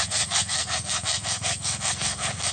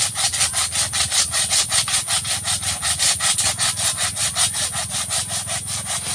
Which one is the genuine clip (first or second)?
second